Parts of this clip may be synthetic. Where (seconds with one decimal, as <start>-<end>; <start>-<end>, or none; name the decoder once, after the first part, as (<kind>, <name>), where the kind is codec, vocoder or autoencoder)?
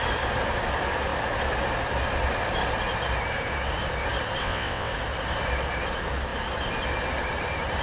4.4-4.9 (vocoder, WaveNeXt)